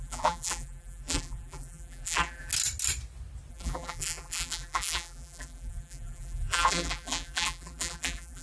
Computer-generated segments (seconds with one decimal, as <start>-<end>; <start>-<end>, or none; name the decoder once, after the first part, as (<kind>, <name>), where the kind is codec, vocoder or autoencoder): 0.0-2.5 (vocoder, BigVGAN v2); 3.5-8.4